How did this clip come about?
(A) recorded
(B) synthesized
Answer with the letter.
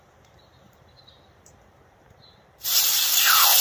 B